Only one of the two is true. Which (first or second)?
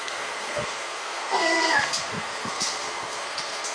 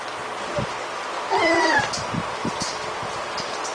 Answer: second